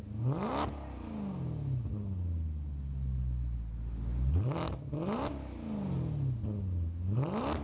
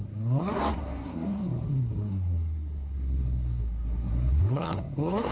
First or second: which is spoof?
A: second